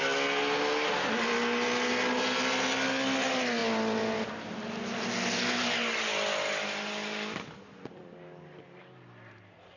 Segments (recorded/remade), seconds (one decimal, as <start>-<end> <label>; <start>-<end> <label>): 0.0-9.8 recorded